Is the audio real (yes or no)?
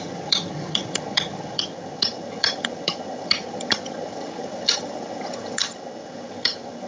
no